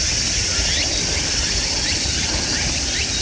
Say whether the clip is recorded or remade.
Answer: recorded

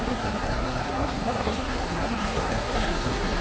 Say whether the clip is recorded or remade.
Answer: remade